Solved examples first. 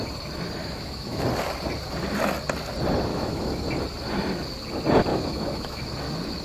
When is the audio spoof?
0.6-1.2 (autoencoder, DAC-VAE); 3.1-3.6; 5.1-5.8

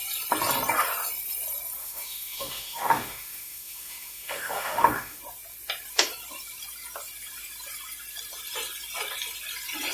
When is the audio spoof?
1.8-5.2 (autoencoder, DAC-VAE)